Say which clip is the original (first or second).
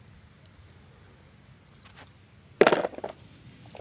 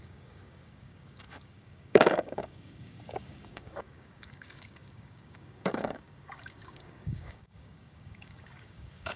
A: first